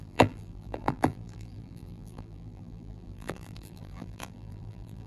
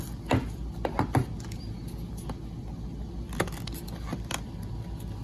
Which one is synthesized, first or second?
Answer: first